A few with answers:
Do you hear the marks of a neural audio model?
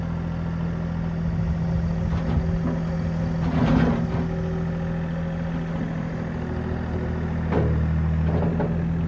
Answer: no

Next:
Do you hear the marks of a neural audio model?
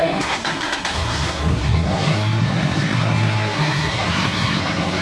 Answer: yes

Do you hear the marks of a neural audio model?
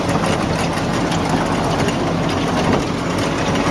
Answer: no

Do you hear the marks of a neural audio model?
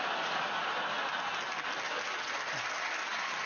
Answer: no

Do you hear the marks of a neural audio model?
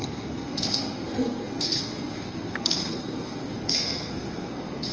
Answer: yes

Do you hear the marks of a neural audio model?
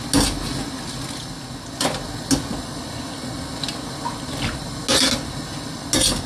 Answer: no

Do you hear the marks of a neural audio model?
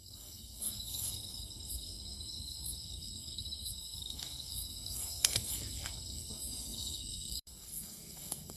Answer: yes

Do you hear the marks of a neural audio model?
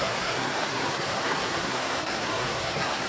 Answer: yes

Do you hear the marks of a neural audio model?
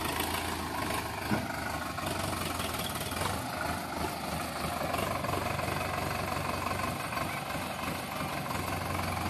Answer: no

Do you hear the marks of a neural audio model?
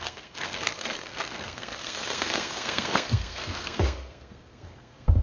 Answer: yes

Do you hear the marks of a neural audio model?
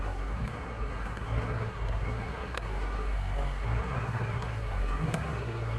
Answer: yes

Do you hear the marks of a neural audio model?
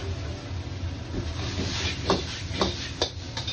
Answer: no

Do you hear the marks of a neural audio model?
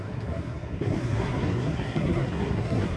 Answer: yes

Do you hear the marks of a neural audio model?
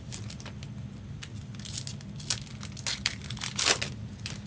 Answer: no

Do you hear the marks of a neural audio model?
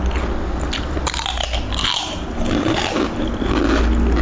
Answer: no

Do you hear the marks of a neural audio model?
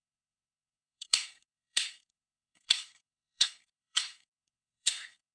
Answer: yes